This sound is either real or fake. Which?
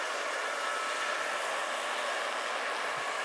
real